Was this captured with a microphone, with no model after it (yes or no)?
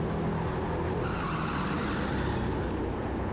yes